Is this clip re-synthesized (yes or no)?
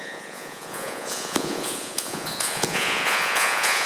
yes